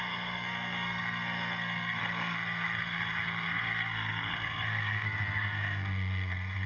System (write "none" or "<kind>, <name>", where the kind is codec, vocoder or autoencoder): codec, SNAC